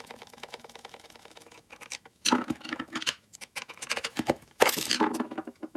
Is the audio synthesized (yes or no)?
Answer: yes